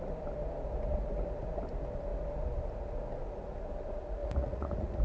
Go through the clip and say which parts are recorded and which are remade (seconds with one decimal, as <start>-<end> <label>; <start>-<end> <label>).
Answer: 0.0-4.2 recorded; 4.2-5.0 remade

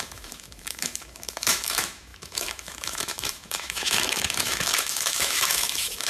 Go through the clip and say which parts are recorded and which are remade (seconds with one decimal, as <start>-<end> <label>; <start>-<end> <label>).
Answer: 0.0-6.1 remade

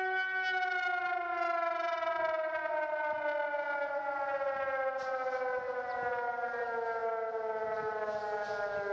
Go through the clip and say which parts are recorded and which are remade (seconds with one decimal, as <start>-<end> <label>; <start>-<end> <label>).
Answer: 0.0-8.9 recorded

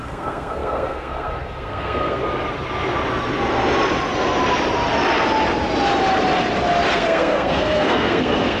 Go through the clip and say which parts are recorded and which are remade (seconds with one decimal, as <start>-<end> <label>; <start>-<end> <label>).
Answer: 0.0-2.2 remade; 2.2-6.9 recorded; 6.9-8.6 remade